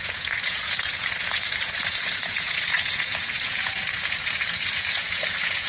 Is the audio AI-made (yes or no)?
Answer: yes